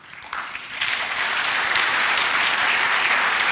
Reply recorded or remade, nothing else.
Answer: remade